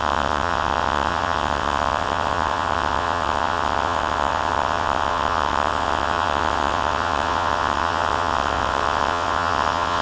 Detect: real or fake fake